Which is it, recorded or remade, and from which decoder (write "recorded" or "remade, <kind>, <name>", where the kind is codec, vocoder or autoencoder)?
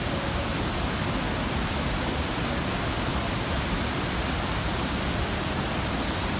recorded